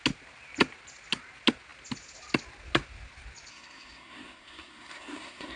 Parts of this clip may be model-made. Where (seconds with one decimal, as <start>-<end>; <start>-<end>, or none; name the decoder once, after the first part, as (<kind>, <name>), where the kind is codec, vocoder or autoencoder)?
3.5-5.6 (codec, SNAC)